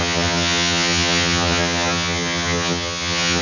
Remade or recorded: remade